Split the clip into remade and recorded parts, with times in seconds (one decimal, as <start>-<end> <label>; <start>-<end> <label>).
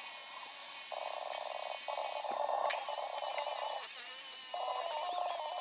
0.0-5.6 recorded